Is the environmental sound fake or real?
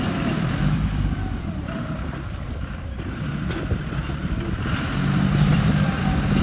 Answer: fake